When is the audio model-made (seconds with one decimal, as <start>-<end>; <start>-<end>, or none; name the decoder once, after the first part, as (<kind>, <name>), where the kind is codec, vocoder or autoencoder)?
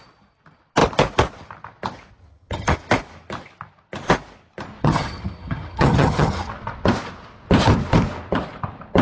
2.2-2.8 (vocoder, HiFi-GAN); 4.8-6.5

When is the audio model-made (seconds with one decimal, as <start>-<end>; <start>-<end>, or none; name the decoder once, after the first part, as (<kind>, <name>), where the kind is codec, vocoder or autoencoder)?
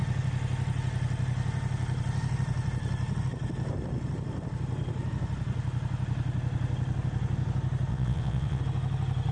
7.9-8.6 (vocoder, WaveNeXt)